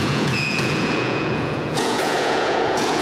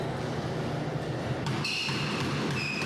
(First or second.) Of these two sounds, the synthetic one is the first